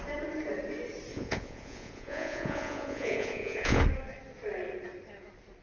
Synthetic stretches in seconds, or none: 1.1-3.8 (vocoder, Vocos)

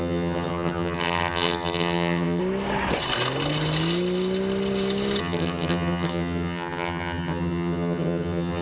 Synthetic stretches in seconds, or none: 0.0-2.4 (vocoder, HiFi-GAN); 5.2-8.6

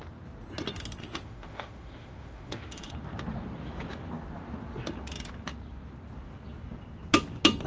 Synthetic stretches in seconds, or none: 1.0-2.9 (autoencoder, DAC-VAE)